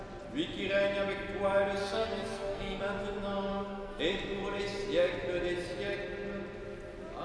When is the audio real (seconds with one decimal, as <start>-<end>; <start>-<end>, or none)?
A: 0.0-1.8; 2.8-3.5; 4.0-7.2

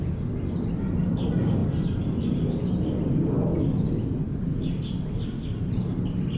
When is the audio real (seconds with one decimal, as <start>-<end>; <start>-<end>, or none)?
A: none

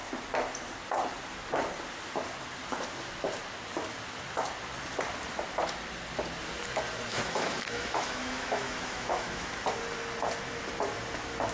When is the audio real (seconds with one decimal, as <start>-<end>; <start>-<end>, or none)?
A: 0.0-7.1; 9.5-11.5

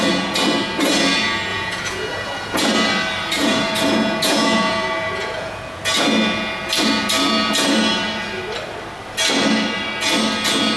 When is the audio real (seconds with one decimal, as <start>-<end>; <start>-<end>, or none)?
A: 0.0-1.5; 2.6-3.4; 5.8-10.8

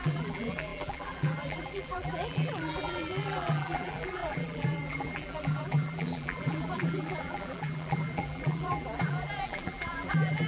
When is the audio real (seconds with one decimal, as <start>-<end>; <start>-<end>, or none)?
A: none

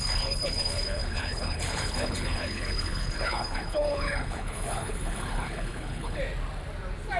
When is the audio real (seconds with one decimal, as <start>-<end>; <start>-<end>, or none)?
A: 6.2-7.2

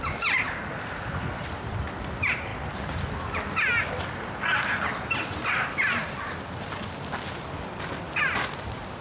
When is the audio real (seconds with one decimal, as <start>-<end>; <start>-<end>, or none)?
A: 0.0-9.0

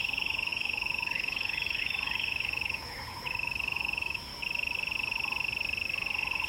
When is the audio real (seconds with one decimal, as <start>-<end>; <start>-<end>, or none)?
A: 4.3-6.5